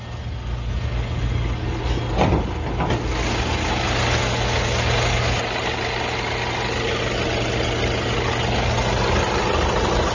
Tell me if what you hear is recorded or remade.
recorded